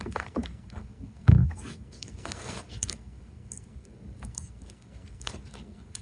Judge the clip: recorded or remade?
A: remade